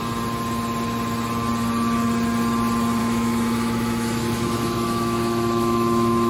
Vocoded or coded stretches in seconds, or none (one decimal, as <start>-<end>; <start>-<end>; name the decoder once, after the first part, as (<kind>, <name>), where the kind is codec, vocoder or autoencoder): 3.0-6.3 (autoencoder, DAC-VAE)